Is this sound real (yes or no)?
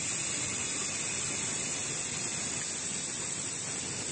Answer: yes